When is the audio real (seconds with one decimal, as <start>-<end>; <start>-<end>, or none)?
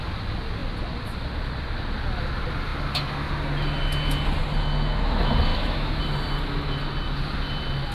0.0-5.5; 6.0-7.9